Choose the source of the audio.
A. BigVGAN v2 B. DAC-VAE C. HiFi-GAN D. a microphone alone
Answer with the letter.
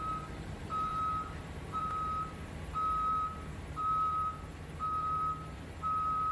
A